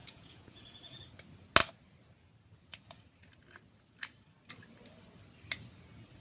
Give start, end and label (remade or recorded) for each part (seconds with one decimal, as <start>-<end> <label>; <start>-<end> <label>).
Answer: 0.0-1.0 remade; 1.0-6.2 recorded